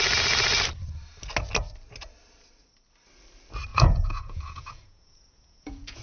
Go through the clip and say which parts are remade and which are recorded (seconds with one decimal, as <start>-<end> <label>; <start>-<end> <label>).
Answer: 0.0-3.7 recorded; 3.7-6.0 remade